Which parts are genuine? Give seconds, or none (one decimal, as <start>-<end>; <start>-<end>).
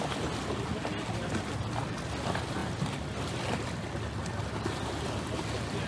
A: 0.0-5.9